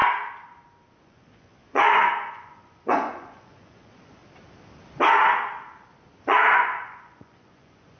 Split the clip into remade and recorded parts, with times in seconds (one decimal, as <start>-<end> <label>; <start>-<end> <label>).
0.0-1.0 recorded; 1.0-4.2 remade; 4.2-6.2 recorded; 6.2-8.0 remade